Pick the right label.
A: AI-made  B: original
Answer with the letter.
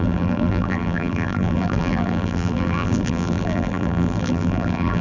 A